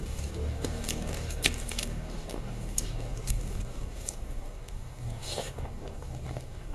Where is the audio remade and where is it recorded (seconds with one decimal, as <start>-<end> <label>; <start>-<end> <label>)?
0.0-6.7 remade